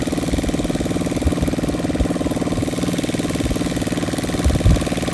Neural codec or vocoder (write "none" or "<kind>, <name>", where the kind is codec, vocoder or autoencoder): none